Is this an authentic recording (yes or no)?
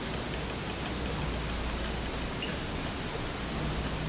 yes